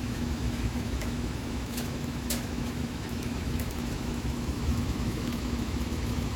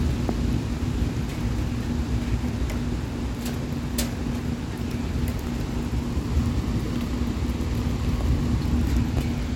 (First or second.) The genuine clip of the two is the second